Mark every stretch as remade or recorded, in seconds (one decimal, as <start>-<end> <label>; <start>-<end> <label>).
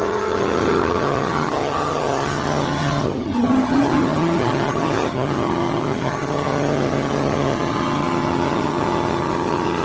0.0-9.8 remade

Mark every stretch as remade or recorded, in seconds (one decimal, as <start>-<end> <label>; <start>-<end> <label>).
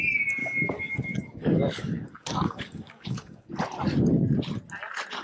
0.0-0.4 recorded; 0.4-3.5 remade; 3.5-5.2 recorded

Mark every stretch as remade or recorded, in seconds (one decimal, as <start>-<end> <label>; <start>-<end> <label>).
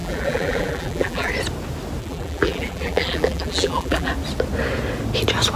0.0-1.3 remade; 1.3-2.0 recorded; 2.0-4.1 remade; 4.1-5.6 recorded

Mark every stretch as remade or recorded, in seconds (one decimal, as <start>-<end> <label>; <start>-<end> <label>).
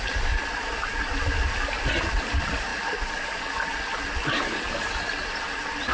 0.0-5.9 recorded